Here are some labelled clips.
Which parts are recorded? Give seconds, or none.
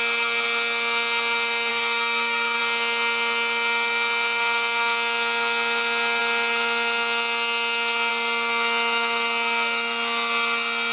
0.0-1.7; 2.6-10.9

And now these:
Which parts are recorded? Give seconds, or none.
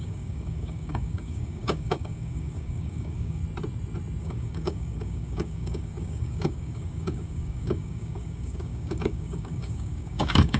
3.4-4.2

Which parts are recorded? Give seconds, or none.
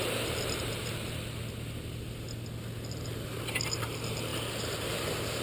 0.0-5.4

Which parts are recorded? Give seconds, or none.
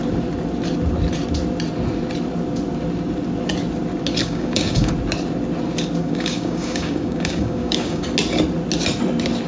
0.0-4.2; 4.9-6.0; 8.0-9.5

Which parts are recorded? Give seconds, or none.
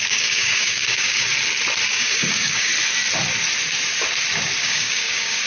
1.3-1.9; 2.7-4.6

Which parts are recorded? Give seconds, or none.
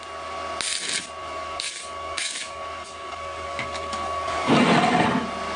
0.0-1.2; 4.6-5.6